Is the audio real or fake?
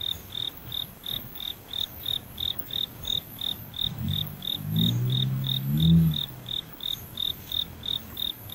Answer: fake